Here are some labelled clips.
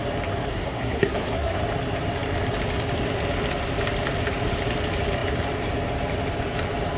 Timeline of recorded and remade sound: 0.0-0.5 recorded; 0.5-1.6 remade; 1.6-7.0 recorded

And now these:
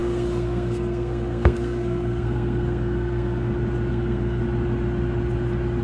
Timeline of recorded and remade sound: 0.0-3.5 remade; 3.5-3.9 recorded; 3.9-4.4 remade; 4.4-5.8 recorded

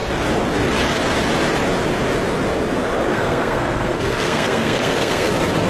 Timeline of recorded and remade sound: 0.0-3.1 recorded; 3.1-5.3 remade; 5.3-5.7 recorded

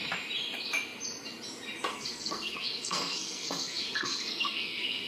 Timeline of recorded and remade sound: 0.0-1.9 recorded; 1.9-5.1 remade

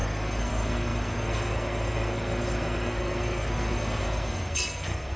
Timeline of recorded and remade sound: 0.0-5.2 remade

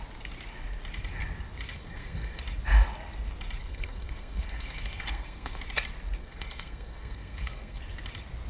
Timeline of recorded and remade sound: 0.0-1.7 recorded; 1.7-2.4 remade; 2.4-3.6 recorded; 3.6-5.6 remade; 5.6-6.2 recorded; 6.2-7.8 remade; 7.8-8.5 recorded